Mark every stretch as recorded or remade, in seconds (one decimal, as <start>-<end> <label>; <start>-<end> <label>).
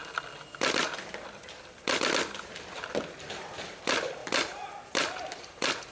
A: 0.0-4.2 recorded; 4.2-5.5 remade; 5.5-5.9 recorded